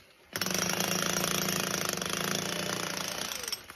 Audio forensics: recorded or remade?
recorded